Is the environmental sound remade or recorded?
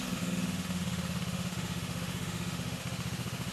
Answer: remade